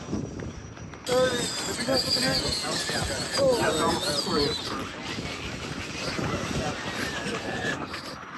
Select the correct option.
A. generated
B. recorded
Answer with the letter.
B